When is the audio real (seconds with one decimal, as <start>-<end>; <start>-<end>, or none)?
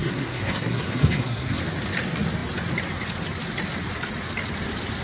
1.6-5.0